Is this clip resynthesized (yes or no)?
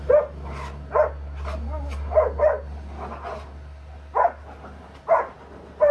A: no